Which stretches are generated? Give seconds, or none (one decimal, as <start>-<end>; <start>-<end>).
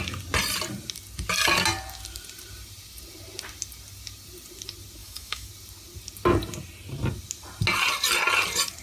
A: 5.0-5.5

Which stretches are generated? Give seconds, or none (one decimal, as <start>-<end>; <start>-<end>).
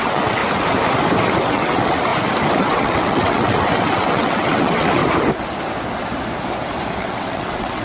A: 0.0-0.4; 1.4-2.1; 2.6-5.0; 7.0-7.8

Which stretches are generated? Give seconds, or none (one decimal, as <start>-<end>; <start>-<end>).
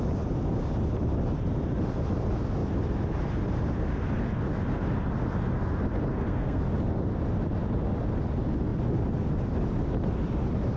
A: 6.1-6.6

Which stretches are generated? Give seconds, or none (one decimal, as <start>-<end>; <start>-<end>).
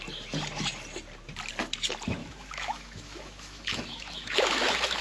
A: 2.2-5.0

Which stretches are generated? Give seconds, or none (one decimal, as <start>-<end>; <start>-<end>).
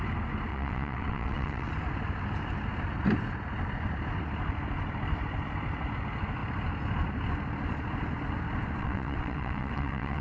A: 0.5-1.7; 8.8-10.2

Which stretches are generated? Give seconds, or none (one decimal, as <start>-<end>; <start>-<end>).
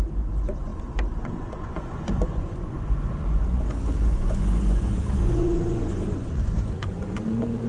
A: 0.0-7.7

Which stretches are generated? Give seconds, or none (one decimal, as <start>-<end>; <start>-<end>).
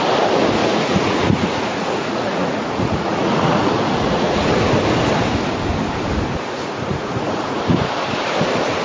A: 0.6-4.6; 6.6-7.6